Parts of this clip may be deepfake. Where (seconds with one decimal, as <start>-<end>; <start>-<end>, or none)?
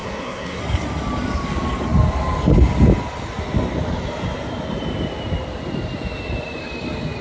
0.0-0.6